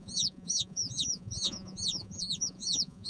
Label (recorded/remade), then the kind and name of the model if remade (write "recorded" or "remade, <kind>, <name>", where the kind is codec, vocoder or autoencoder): remade, vocoder, Vocos